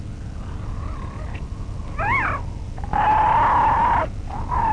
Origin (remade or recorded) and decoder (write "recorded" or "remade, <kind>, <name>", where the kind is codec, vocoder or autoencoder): recorded